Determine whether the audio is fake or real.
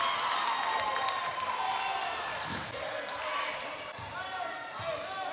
real